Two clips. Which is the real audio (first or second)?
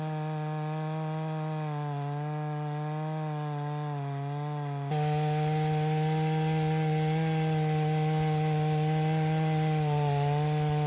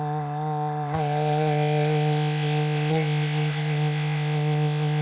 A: first